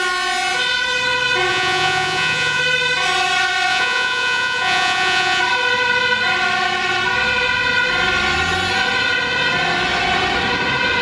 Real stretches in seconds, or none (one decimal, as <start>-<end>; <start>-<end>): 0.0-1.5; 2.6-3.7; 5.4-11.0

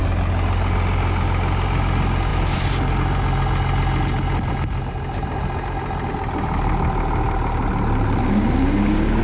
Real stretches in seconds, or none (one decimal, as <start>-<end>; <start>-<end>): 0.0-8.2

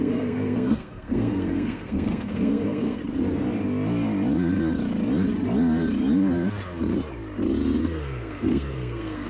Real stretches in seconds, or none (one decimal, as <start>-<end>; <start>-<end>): 3.0-7.8

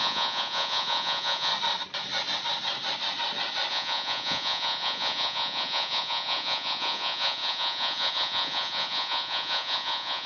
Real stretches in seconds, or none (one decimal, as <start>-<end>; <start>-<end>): 1.5-3.7